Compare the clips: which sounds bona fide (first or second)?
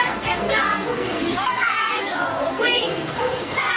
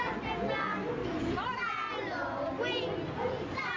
second